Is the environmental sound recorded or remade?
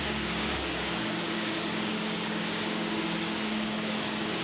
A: remade